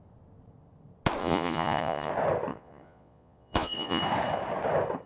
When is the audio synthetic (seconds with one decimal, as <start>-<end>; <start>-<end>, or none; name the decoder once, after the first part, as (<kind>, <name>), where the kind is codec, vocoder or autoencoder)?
1.2-2.1 (vocoder, Vocos); 2.5-4.0